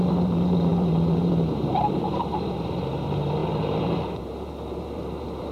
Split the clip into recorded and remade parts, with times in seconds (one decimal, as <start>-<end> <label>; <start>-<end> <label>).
0.0-5.5 remade